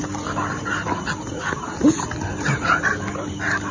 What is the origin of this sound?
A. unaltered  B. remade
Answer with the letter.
A